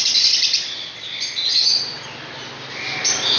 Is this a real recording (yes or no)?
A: yes